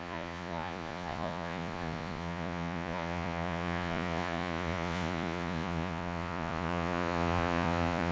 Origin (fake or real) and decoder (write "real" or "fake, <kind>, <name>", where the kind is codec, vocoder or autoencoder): fake, vocoder, Vocos